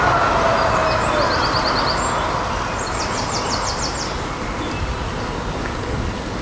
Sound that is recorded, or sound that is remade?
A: recorded